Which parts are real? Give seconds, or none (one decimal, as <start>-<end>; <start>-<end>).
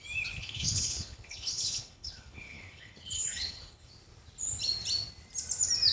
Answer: 0.0-0.4; 3.9-5.9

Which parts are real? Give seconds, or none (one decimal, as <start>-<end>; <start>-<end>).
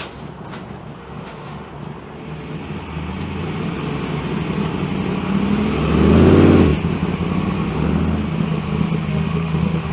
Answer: 0.0-1.0; 1.7-9.1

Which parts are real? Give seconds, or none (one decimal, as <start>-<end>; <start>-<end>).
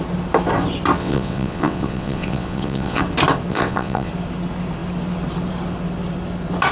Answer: 0.0-1.0; 3.0-3.5; 4.1-6.7